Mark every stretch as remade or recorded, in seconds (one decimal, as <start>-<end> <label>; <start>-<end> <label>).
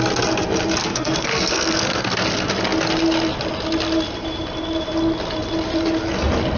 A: 0.0-0.8 recorded; 0.8-2.0 remade; 2.0-6.6 recorded